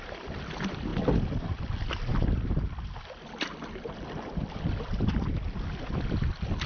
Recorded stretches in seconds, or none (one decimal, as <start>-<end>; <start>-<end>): 0.0-6.7